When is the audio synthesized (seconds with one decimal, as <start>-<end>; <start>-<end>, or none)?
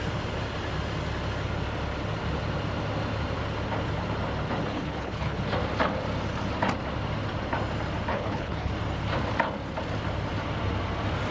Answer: 4.7-5.4; 8.1-8.7